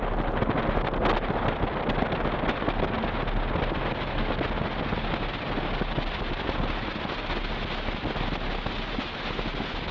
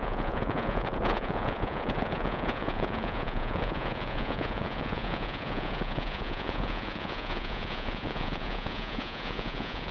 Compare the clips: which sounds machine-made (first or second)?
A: second